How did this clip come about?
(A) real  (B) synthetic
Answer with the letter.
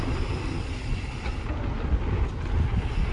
A